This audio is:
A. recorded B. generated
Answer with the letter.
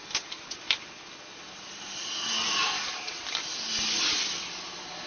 A